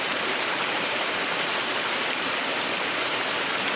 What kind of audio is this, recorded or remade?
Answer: remade